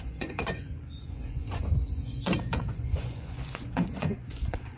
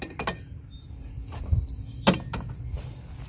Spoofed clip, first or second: first